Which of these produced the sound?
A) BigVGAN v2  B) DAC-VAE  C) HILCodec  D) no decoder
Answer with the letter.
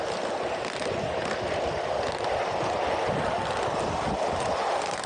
D